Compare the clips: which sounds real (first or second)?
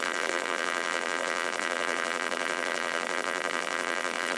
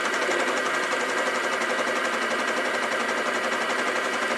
second